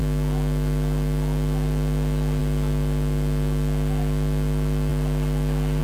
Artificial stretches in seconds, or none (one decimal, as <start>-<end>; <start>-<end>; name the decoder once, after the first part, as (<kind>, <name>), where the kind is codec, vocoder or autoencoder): none